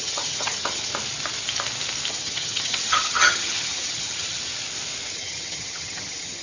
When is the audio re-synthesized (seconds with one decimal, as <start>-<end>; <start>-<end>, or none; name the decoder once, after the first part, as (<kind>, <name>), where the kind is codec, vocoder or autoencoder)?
0.0-0.9 (vocoder, HiFi-GAN); 2.1-4.4; 5.1-6.4